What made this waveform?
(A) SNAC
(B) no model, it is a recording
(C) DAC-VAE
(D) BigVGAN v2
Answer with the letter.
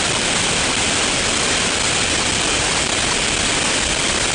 B